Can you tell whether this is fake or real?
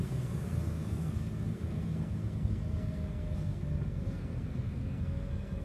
fake